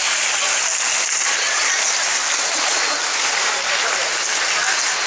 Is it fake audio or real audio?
real